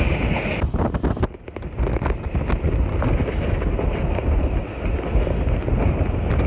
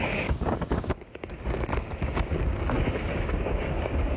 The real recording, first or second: first